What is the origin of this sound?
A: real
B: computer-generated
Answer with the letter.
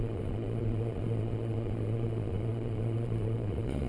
B